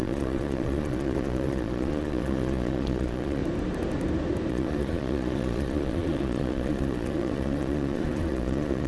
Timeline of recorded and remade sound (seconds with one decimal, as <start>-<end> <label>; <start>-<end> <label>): 0.0-3.4 remade; 3.4-4.5 recorded; 4.5-8.9 remade